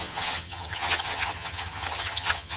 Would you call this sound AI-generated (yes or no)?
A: yes